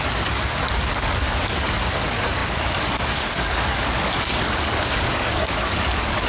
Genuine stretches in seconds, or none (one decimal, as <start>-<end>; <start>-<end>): none